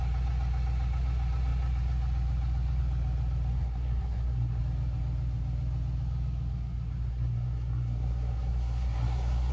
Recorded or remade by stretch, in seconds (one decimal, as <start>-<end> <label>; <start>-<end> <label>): 0.0-3.5 recorded; 3.5-4.6 remade; 4.6-7.1 recorded; 7.1-9.5 remade